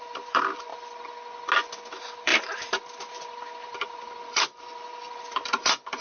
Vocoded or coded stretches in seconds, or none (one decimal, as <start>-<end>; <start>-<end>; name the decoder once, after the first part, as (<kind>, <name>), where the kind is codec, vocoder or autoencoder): 0.0-0.7 (vocoder, BigVGAN v2); 1.9-6.0